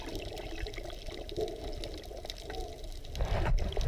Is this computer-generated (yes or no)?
no